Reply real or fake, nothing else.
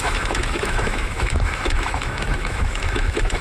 fake